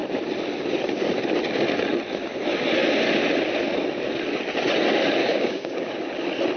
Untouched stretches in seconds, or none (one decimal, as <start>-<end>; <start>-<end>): 0.0-5.2; 5.9-6.6